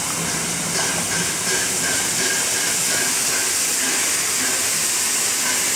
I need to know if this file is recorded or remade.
recorded